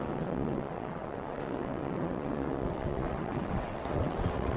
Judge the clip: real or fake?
fake